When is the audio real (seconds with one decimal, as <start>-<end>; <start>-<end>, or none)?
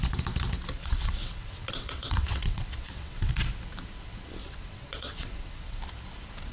0.0-0.8; 3.3-4.4; 5.8-6.5